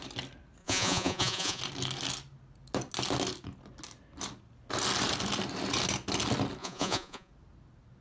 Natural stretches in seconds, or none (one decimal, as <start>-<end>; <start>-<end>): 0.0-0.6; 1.6-6.6; 7.3-8.0